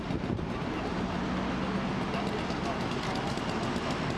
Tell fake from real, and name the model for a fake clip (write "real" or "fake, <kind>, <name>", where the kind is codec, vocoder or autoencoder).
real